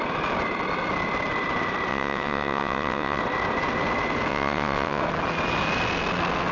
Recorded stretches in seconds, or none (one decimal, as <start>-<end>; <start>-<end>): 0.0-1.9; 3.2-4.3; 5.0-6.5